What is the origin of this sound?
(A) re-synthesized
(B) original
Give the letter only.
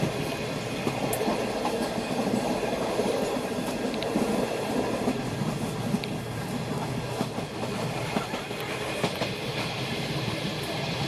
B